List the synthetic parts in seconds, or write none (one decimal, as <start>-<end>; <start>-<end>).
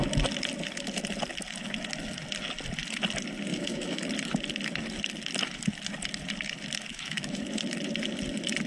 3.5-4.1; 6.9-7.4